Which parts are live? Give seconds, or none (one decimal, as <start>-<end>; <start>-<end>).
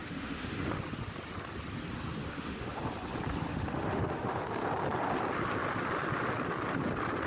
0.7-2.2; 2.8-3.5; 4.4-7.3